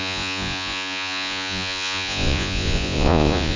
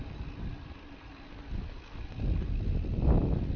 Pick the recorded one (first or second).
second